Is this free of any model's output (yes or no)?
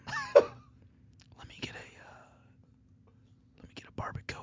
yes